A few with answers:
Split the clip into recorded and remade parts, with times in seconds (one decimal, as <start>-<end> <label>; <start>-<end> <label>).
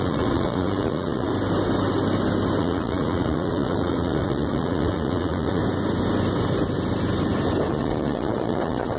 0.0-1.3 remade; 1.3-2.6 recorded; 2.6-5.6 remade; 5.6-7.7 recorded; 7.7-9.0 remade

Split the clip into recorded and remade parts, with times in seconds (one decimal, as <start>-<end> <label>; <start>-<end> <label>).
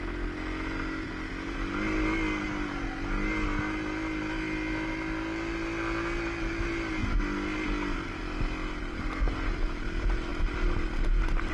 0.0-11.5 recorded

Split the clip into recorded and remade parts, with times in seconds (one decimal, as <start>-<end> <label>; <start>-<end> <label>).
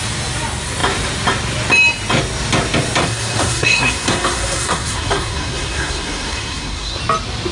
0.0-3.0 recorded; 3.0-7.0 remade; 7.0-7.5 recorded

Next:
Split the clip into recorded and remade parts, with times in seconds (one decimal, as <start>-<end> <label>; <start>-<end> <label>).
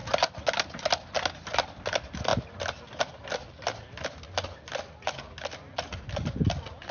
0.0-6.9 recorded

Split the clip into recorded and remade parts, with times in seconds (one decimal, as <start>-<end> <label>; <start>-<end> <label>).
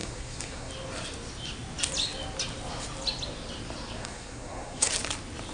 0.0-0.7 remade; 0.7-4.0 recorded; 4.0-4.9 remade; 4.9-5.5 recorded